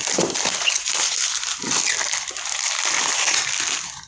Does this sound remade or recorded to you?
recorded